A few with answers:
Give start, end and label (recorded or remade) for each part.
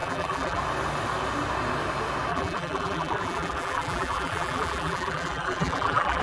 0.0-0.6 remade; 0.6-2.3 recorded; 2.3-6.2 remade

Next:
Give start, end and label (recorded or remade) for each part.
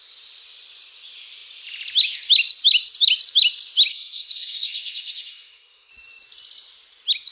0.0-3.9 recorded; 3.9-5.9 remade; 5.9-7.3 recorded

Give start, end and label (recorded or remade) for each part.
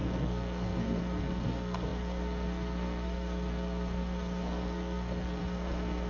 0.0-6.1 remade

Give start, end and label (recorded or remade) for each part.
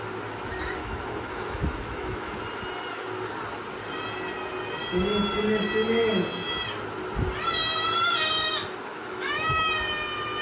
0.0-0.8 recorded; 0.8-2.3 remade; 2.3-8.9 recorded; 8.9-9.7 remade; 9.7-10.4 recorded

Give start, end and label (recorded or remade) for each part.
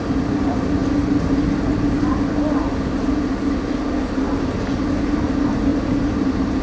0.0-5.7 recorded; 5.7-6.6 remade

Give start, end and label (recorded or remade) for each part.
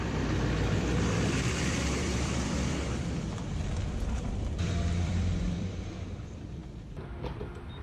0.0-2.7 remade; 2.7-3.9 recorded; 3.9-6.6 remade; 6.6-7.8 recorded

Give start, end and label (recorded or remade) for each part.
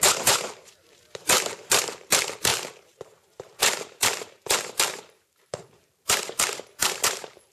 0.0-7.5 remade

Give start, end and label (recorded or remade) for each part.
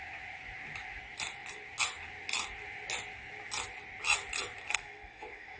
0.0-4.6 recorded; 4.6-5.6 remade